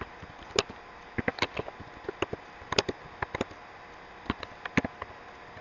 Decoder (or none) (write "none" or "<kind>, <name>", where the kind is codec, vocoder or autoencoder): none